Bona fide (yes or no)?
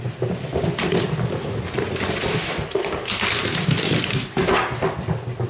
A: yes